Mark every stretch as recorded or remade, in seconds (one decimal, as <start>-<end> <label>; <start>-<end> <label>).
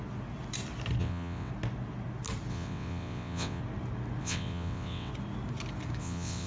0.0-1.0 recorded; 1.0-1.5 remade; 1.5-2.5 recorded; 2.5-3.6 remade; 3.6-4.2 recorded; 4.2-5.1 remade; 5.1-6.0 recorded; 6.0-6.5 remade